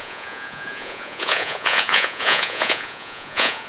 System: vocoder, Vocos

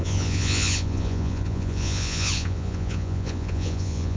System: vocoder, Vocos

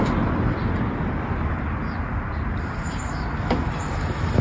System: none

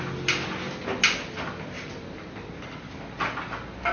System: none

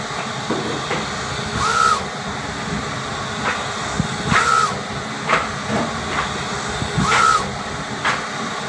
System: none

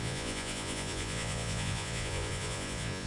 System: vocoder, Vocos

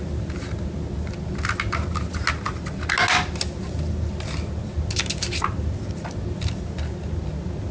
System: none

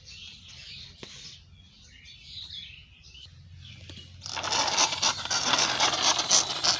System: none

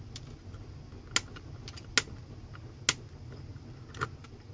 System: none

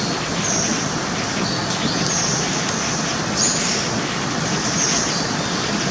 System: none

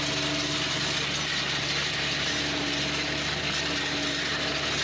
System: none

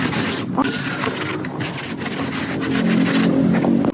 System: none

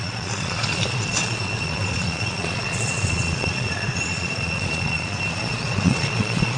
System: vocoder, Vocos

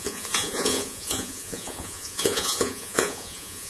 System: vocoder, Vocos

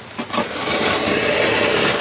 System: none